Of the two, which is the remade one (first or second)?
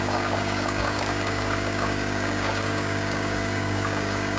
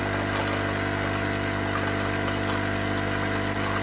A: first